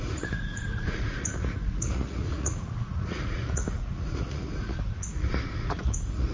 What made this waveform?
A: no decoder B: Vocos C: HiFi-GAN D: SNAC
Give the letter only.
B